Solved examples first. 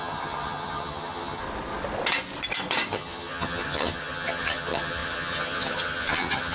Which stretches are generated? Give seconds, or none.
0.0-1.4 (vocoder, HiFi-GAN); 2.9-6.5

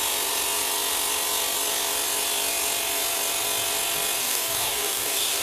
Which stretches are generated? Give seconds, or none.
4.2-5.4 (codec, DAC)

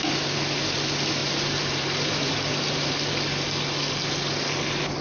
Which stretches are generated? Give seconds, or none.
1.2-2.3 (vocoder, BigVGAN v2)

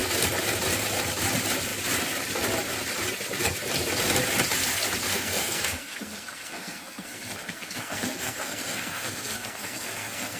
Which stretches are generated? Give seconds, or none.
5.1-10.4 (codec, SNAC)

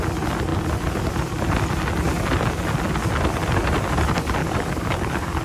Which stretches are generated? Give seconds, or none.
4.4-5.4 (codec, DAC)